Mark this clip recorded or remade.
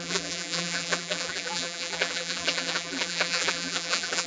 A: remade